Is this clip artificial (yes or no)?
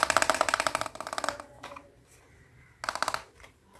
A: no